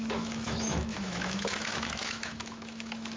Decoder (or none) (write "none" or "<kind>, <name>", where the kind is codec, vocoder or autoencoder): autoencoder, DAC-VAE